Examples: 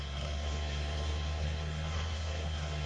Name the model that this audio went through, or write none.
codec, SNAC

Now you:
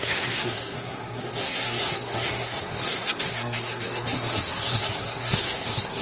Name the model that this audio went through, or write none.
codec, SNAC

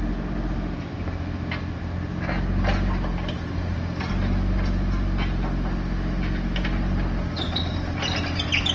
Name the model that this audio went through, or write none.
none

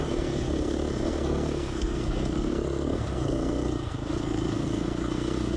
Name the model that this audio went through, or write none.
codec, SNAC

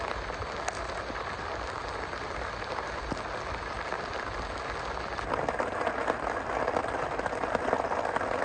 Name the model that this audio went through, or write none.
none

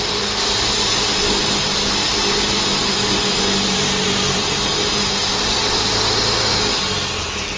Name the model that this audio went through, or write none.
none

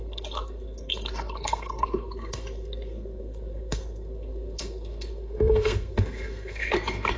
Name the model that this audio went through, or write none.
codec, SNAC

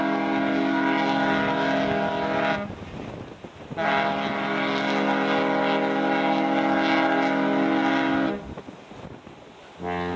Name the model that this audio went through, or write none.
none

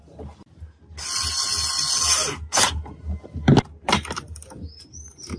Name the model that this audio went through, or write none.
none